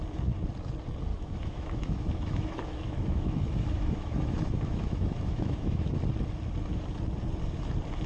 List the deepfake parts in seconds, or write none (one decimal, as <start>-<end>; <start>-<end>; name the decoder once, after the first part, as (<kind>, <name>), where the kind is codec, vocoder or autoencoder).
1.1-6.0 (autoencoder, DAC-VAE)

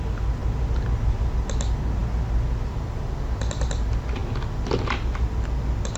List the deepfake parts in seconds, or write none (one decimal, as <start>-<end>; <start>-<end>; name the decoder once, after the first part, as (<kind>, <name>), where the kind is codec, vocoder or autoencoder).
none

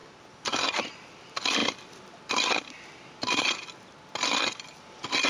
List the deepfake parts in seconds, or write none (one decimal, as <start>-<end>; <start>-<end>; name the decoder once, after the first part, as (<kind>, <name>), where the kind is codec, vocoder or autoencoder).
none

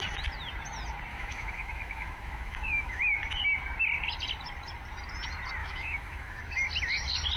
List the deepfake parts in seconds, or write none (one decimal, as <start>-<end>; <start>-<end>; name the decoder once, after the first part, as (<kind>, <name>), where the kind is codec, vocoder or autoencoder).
1.1-3.0 (autoencoder, DAC-VAE); 5.6-6.4

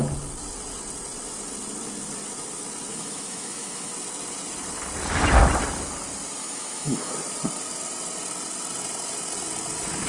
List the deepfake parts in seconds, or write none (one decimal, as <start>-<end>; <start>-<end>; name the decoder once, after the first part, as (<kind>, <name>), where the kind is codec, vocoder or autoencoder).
2.9-3.9 (autoencoder, DAC-VAE); 6.4-7.1